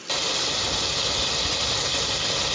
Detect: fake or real real